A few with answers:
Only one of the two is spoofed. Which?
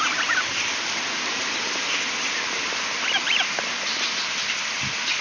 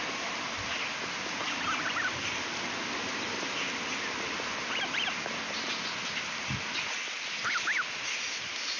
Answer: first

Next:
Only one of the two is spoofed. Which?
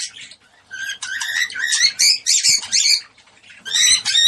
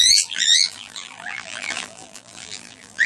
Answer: second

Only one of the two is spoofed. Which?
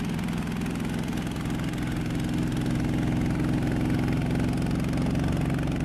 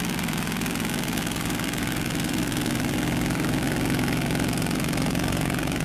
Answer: second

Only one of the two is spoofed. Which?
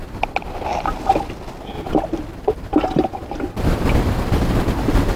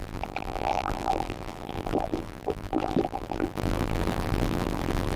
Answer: second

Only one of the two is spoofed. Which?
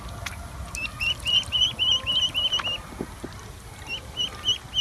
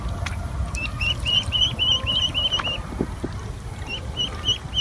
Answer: second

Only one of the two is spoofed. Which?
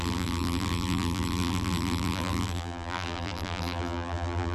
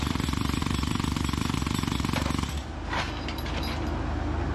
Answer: first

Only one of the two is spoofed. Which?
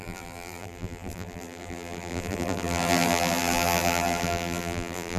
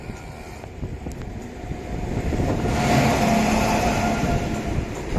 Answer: first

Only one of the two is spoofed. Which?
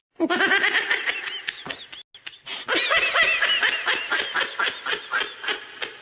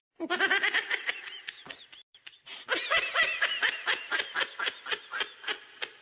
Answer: second